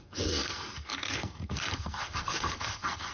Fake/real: fake